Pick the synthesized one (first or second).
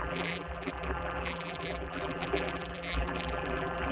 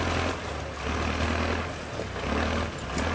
first